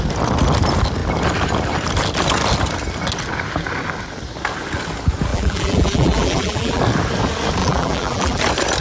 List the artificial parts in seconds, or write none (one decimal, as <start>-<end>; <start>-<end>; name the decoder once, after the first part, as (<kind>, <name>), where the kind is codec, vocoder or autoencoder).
5.3-6.8 (vocoder, BigVGAN v2); 7.6-8.4